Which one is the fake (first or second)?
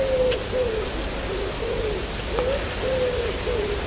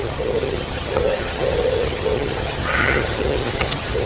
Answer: second